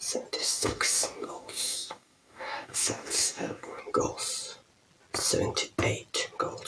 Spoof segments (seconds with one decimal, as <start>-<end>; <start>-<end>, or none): 0.4-3.8